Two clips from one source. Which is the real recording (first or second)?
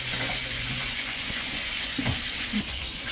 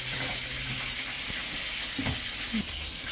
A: second